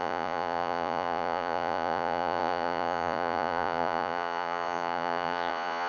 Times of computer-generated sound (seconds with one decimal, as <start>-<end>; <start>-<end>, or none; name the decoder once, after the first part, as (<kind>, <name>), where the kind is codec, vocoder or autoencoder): 0.0-5.9 (vocoder, Vocos)